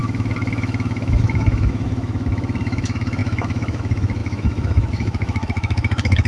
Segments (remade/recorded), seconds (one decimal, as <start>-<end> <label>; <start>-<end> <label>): 0.0-6.3 remade